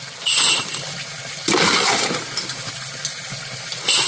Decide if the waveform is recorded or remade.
recorded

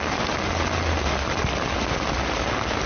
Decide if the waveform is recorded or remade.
recorded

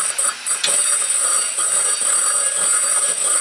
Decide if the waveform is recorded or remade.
recorded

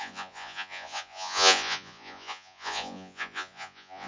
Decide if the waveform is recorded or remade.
remade